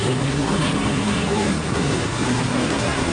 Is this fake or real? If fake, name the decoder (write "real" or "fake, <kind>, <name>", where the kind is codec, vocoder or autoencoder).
fake, codec, SNAC